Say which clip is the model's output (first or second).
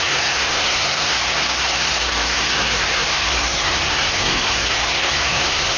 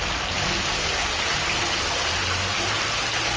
first